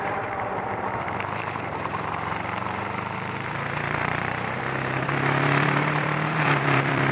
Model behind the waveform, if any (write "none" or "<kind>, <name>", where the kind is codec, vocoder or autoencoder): vocoder, BigVGAN v2